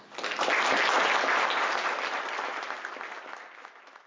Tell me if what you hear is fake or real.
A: real